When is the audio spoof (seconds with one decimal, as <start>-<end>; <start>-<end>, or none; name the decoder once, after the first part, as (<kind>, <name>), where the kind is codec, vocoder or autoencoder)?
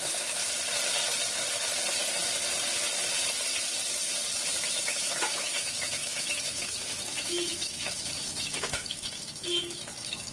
0.0-0.4 (autoencoder, DAC-VAE); 4.9-10.3